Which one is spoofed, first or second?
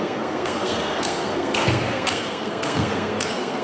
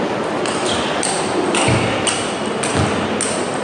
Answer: first